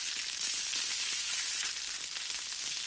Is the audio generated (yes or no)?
no